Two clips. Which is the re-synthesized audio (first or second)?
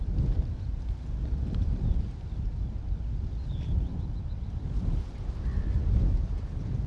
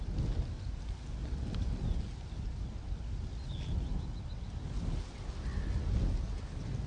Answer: first